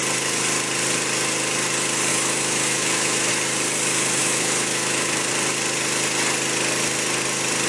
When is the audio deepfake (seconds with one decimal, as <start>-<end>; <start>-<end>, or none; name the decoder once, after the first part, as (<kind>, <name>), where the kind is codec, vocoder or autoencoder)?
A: 2.1-3.3 (autoencoder, DAC-VAE); 4.2-5.3